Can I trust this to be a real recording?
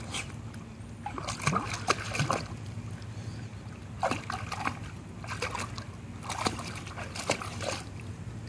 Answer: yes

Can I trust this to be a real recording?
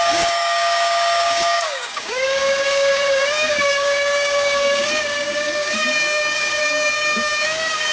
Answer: no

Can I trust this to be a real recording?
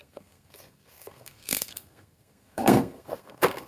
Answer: no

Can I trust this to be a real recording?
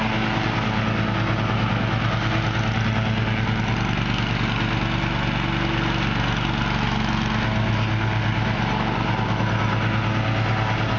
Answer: yes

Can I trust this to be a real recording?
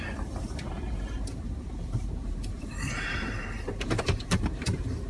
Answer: no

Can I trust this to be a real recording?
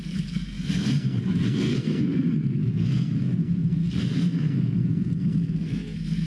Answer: no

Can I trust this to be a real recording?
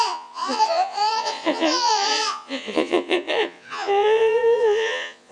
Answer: no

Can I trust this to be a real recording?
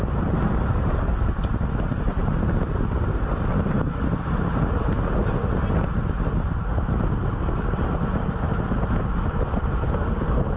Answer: yes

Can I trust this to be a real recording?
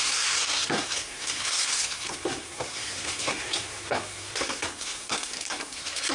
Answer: no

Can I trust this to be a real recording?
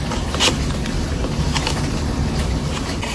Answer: yes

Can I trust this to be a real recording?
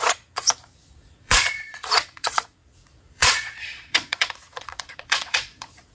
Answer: no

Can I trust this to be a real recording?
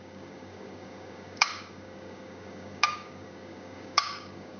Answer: no